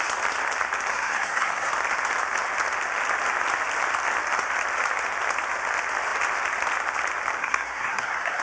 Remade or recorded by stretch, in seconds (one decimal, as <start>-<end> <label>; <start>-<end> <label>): 0.0-0.9 recorded; 0.9-1.7 remade; 1.7-7.4 recorded; 7.4-8.4 remade